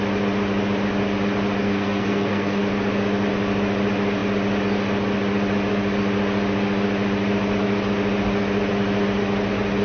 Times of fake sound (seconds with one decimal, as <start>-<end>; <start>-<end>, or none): 1.6-2.6